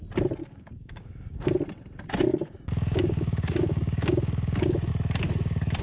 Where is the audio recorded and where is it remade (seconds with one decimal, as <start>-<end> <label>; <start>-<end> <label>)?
0.0-0.4 recorded; 0.4-1.6 remade; 1.6-2.3 recorded; 2.3-4.9 remade; 4.9-5.8 recorded